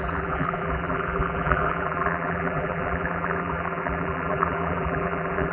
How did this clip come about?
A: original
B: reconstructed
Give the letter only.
B